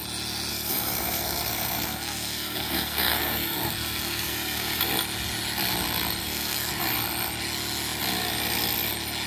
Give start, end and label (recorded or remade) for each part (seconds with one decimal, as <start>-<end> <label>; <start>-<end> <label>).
0.0-0.5 recorded; 0.5-4.8 remade; 4.8-6.2 recorded; 6.2-6.7 remade; 6.7-9.3 recorded